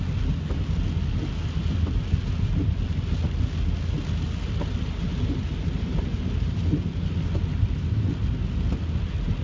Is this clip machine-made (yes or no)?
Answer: no